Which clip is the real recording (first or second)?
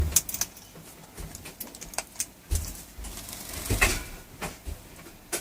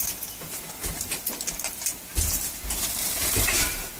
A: first